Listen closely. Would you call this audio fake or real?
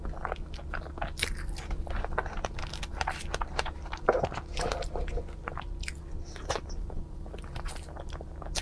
real